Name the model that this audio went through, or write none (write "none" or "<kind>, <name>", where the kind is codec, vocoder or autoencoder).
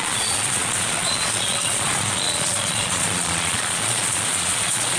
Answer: vocoder, Vocos